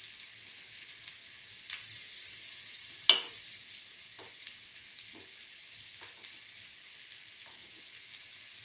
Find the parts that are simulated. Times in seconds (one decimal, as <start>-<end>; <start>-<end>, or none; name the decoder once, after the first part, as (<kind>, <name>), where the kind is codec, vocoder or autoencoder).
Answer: none